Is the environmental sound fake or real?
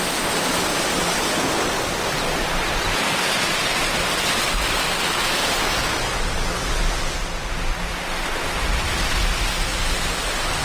real